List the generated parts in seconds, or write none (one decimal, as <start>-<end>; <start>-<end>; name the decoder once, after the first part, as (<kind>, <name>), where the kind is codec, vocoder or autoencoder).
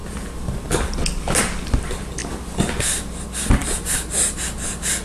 none